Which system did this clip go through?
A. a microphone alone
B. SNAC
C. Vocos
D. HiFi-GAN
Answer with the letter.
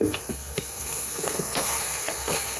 B